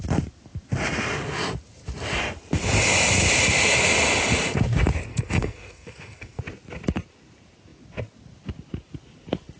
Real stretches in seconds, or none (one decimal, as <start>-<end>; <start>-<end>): 0.0-5.1; 6.4-9.6